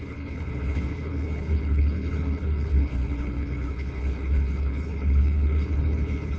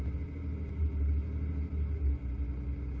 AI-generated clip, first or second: first